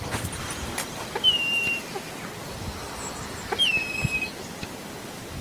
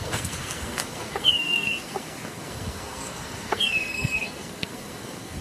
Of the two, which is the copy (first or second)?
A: second